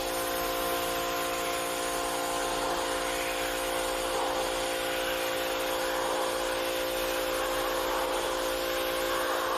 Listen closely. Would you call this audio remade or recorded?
recorded